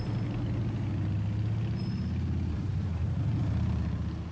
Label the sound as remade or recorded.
recorded